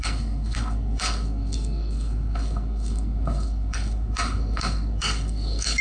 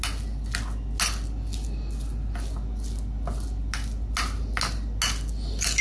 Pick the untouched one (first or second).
second